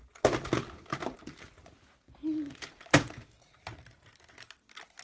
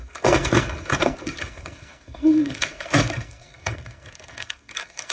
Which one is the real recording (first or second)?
first